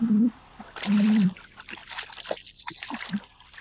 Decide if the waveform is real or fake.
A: real